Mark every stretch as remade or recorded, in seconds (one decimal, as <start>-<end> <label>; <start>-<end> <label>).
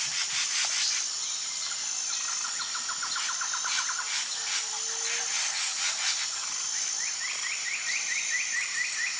0.0-9.2 recorded